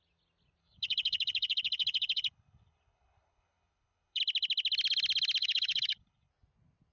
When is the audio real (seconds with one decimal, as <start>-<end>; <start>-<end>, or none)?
0.0-0.6; 4.2-5.4; 6.3-6.9